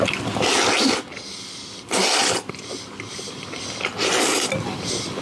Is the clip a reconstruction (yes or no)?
no